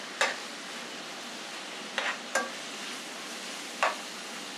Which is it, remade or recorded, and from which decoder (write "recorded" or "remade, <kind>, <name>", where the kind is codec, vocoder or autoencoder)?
recorded